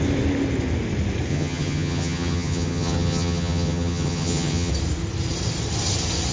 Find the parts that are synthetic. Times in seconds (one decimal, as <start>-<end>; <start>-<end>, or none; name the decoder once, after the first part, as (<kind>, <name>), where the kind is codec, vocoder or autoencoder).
1.3-4.7 (vocoder, HiFi-GAN)